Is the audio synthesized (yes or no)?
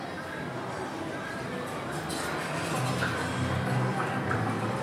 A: no